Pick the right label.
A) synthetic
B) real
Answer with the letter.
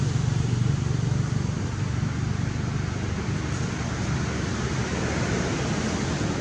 B